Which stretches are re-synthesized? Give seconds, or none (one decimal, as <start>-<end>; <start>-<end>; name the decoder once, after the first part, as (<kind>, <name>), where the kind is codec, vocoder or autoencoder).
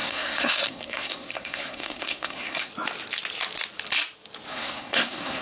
0.0-2.7 (codec, SNAC); 4.5-5.4